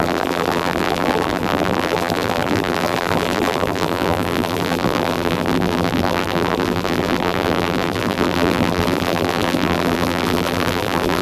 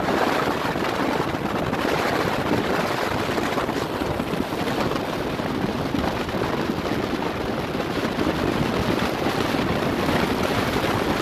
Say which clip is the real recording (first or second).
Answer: second